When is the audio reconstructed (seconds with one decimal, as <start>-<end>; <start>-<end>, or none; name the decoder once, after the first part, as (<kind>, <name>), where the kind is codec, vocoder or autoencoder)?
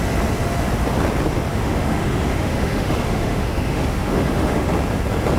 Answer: 1.5-4.7 (autoencoder, DAC-VAE)